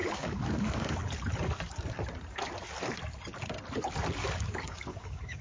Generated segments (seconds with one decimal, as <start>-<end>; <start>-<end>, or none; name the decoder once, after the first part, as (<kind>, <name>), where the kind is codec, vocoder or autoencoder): 0.0-1.0 (codec, DAC); 4.2-5.4